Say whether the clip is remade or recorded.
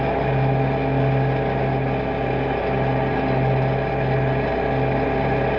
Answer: recorded